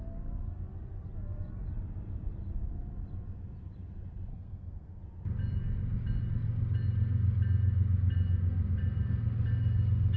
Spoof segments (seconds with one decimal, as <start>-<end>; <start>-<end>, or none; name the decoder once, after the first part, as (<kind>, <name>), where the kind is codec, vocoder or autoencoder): 4.3-5.0 (codec, SNAC)